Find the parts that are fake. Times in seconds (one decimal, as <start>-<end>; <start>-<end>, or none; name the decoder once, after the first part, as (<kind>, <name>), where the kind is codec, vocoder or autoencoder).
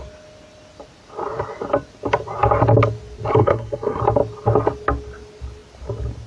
3.4-4.0 (codec, SNAC)